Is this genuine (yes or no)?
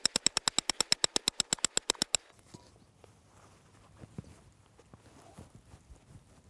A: yes